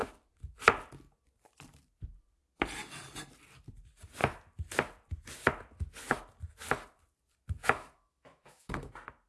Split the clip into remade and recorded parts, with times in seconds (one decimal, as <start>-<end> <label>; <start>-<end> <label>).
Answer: 0.0-7.6 recorded; 7.6-8.9 remade; 8.9-9.3 recorded